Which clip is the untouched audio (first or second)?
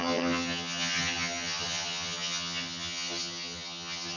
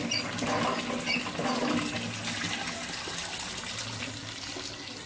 second